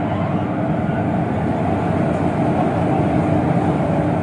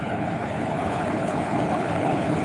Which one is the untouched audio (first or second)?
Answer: first